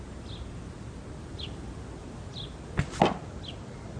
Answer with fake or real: real